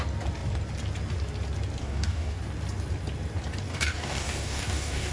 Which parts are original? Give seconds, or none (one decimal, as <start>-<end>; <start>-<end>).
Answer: 0.0-1.8; 2.4-3.7